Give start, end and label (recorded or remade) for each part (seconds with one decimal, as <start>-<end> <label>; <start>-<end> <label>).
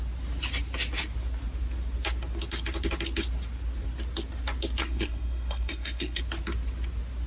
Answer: 0.0-4.8 recorded; 4.8-6.2 remade; 6.2-7.3 recorded